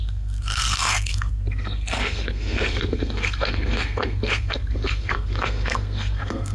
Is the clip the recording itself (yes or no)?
no